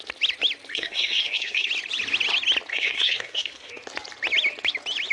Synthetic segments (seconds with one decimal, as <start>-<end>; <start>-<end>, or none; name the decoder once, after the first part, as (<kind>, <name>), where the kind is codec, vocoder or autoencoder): 0.7-1.7 (codec, SNAC); 2.7-3.7